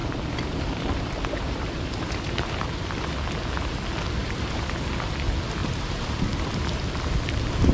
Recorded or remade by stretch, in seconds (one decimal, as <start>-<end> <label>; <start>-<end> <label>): 0.0-2.8 remade; 2.8-4.2 recorded; 4.2-4.9 remade; 4.9-5.6 recorded; 5.6-6.2 remade; 6.2-7.7 recorded